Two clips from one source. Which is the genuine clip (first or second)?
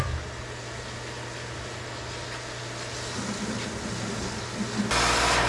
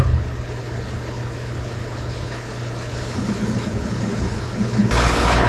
first